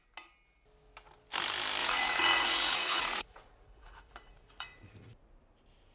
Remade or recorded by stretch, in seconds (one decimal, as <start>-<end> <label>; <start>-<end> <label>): 0.0-1.8 recorded; 1.8-5.3 remade; 5.3-5.9 recorded

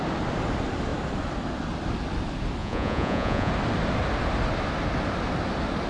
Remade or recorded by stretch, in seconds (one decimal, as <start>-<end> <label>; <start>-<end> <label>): 0.0-2.6 recorded; 2.6-3.5 remade; 3.5-5.9 recorded

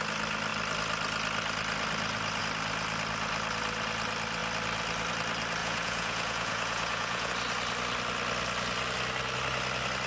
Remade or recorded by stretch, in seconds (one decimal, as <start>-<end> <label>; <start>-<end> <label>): 0.0-5.6 recorded; 5.6-7.3 remade; 7.3-10.1 recorded

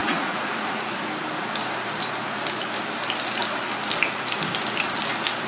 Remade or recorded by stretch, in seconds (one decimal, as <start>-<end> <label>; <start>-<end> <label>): 0.0-1.0 remade; 1.0-5.5 recorded

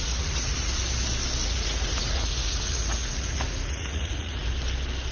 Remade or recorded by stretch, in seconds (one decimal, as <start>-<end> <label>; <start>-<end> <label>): 0.0-0.7 remade; 0.7-1.4 recorded; 1.4-4.5 remade; 4.5-5.1 recorded